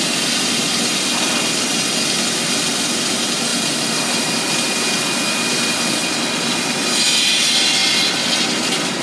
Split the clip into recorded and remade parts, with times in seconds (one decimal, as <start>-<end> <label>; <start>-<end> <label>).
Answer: 0.0-3.5 recorded; 3.5-4.3 remade; 4.3-9.0 recorded